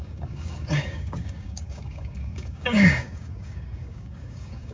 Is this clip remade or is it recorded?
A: remade